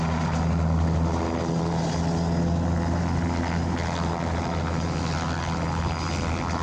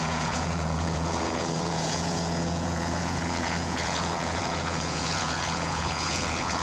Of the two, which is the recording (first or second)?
first